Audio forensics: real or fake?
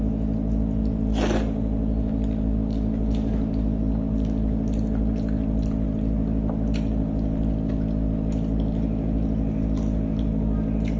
real